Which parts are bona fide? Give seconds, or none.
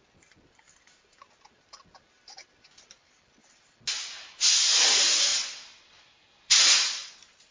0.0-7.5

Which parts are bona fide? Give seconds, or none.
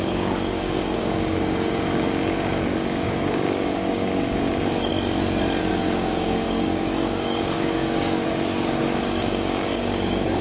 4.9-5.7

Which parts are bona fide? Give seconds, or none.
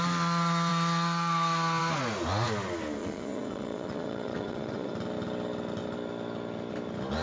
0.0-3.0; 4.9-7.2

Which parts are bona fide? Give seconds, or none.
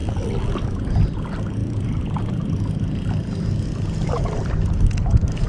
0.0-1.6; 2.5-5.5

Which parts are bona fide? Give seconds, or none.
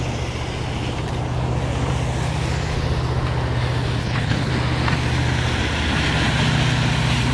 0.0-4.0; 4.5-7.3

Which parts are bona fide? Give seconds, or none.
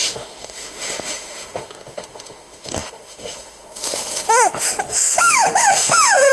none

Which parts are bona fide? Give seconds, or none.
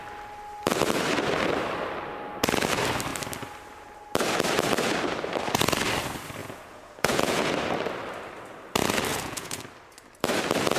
0.0-6.4; 7.5-9.1; 9.6-10.8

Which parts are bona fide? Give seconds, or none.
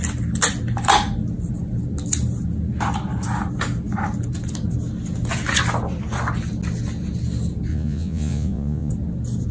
0.0-7.7; 8.9-9.5